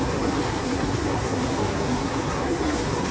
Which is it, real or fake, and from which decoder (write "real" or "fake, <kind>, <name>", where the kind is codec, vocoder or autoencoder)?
fake, codec, SNAC